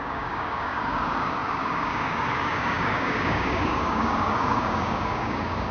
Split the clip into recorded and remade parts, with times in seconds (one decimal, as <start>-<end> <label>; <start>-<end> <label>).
0.0-5.7 remade